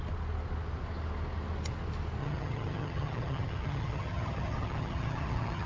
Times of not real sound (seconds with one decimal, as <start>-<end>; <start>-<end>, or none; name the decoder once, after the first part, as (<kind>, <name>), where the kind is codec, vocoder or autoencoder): 2.2-5.7 (vocoder, HiFi-GAN)

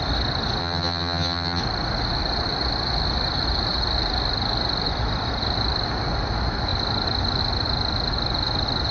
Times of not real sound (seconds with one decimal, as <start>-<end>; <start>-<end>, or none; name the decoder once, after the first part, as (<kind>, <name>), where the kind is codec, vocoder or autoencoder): 0.6-1.6 (vocoder, HiFi-GAN)

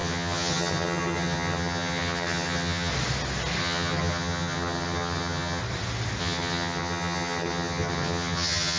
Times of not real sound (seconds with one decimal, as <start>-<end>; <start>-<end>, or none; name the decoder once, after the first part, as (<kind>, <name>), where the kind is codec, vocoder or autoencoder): 0.0-2.9 (vocoder, HiFi-GAN); 3.6-5.6; 6.2-8.8